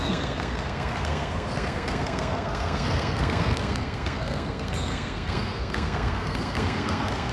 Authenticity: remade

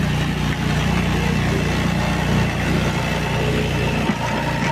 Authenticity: recorded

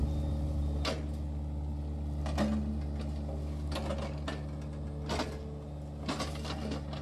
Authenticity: recorded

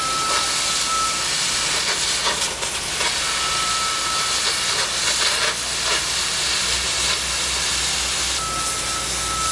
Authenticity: recorded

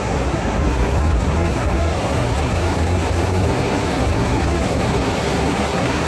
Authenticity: remade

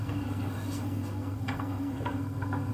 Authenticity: remade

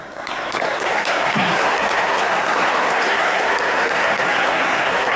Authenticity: remade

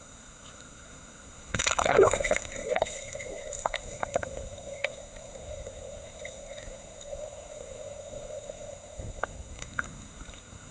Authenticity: remade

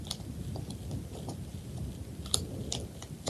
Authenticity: recorded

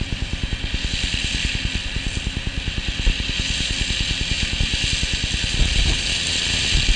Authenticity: recorded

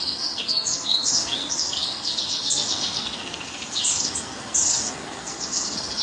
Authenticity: remade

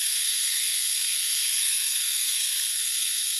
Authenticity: remade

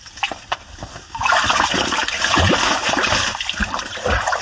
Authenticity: recorded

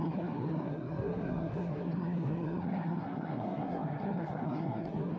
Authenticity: remade